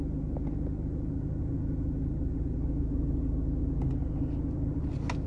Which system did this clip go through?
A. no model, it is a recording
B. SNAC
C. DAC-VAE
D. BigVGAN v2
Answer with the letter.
A